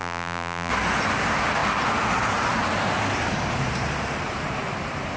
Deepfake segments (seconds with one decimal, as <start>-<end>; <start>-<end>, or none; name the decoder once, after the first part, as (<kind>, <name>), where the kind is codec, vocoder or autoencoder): 0.0-0.7 (vocoder, BigVGAN v2)

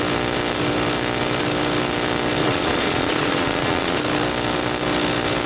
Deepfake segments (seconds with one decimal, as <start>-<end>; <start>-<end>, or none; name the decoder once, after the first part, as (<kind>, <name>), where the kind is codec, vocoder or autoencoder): 2.4-4.0 (vocoder, Vocos)

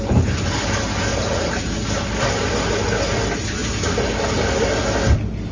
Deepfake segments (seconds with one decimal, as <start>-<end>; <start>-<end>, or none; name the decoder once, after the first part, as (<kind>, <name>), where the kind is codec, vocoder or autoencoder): 1.1-1.7 (vocoder, BigVGAN v2); 3.6-4.1

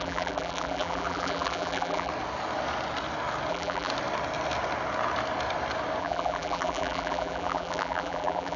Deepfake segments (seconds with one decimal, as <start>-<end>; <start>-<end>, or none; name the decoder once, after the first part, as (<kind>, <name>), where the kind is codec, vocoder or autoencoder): 0.0-2.1 (vocoder, BigVGAN v2); 3.5-3.9; 6.0-8.6

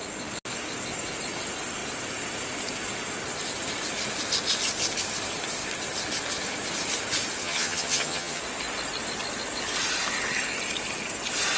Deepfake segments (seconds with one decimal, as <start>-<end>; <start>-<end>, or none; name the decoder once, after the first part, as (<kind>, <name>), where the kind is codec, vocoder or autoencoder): 7.4-8.4 (vocoder, HiFi-GAN)

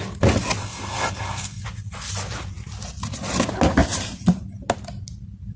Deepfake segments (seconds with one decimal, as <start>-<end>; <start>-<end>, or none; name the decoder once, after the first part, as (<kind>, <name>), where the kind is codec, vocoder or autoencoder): 0.6-1.6 (codec, SNAC)